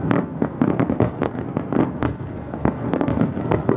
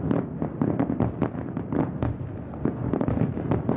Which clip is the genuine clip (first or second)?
second